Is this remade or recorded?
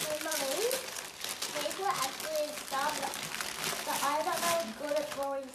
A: recorded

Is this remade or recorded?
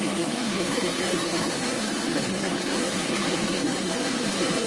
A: remade